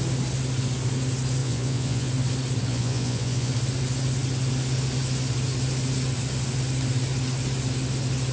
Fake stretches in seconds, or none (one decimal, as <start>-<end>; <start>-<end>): 1.4-2.1; 2.7-3.5